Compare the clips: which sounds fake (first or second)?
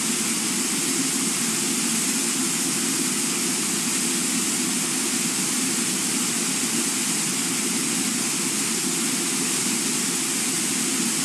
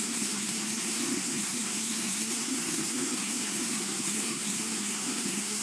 second